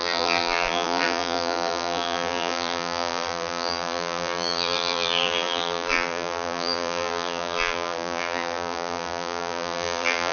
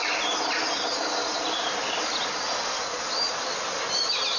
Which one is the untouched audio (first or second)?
second